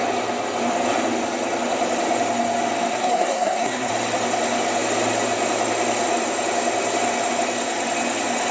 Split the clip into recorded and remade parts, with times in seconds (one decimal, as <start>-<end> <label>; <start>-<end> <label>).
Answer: 0.0-2.9 recorded; 2.9-3.9 remade; 3.9-8.5 recorded